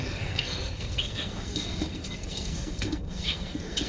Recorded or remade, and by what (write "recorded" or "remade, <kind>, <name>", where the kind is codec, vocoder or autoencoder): remade, codec, SNAC